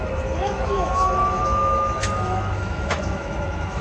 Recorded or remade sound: remade